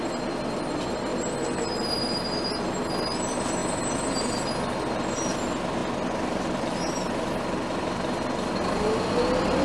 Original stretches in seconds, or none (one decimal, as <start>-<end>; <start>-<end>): 0.0-9.6

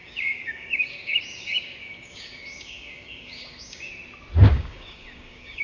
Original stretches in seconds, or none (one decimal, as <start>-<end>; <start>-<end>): 3.9-4.5

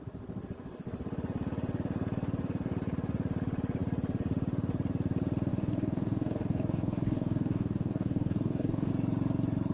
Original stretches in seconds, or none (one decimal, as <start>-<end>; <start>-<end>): 0.0-5.5; 8.9-9.7

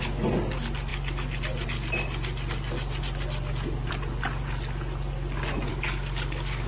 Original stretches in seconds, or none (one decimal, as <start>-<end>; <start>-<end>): 0.0-5.7

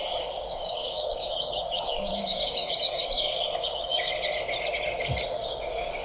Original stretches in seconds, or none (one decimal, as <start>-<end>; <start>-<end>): 4.1-5.3

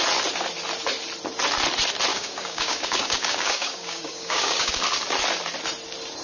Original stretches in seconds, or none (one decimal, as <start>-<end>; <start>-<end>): 0.0-2.1; 4.7-6.2